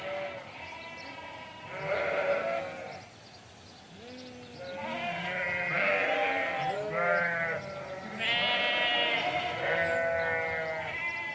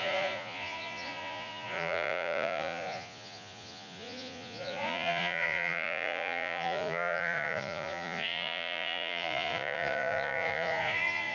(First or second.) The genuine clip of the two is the first